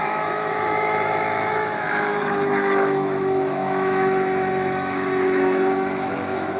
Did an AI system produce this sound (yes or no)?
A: yes